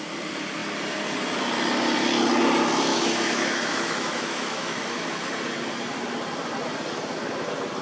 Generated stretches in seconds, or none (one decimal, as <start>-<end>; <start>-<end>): 2.9-5.3